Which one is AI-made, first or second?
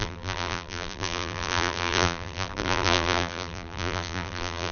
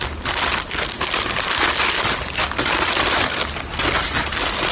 first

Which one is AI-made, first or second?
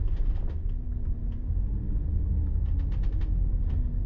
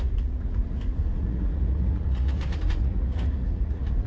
second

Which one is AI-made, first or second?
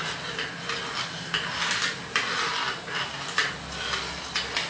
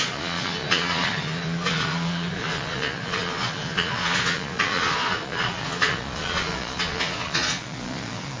second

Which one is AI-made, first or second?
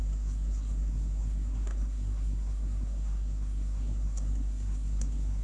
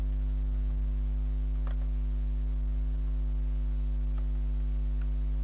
first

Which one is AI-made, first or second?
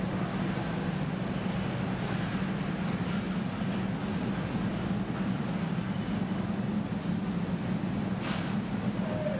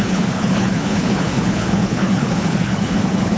second